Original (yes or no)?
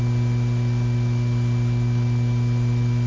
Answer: yes